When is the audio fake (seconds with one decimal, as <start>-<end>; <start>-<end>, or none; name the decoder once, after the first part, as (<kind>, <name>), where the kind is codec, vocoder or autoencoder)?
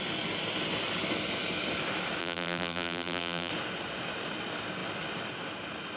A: 2.2-3.5 (vocoder, BigVGAN v2)